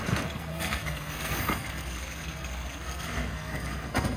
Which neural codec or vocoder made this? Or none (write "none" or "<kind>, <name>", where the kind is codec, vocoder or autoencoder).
codec, SNAC